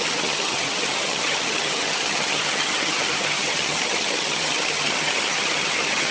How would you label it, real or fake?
fake